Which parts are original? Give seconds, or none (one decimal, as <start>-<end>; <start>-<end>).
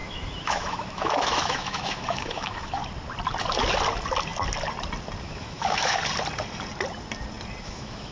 2.8-5.2; 6.0-7.6